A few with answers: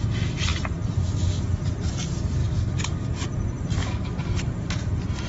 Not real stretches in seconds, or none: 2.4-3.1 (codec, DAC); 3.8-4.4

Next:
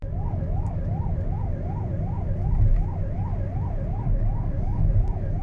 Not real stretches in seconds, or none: 0.0-0.8 (codec, DAC); 4.0-5.4